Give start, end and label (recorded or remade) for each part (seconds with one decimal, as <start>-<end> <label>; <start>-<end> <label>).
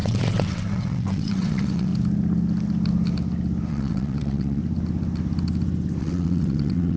0.0-1.9 remade; 1.9-3.7 recorded; 3.7-4.6 remade; 4.6-6.0 recorded; 6.0-7.0 remade